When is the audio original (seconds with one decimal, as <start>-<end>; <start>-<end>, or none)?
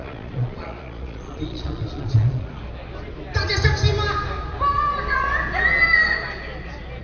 2.6-7.0